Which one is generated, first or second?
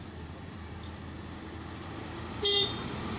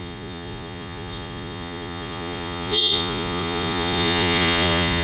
second